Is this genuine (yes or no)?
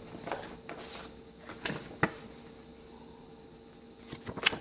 yes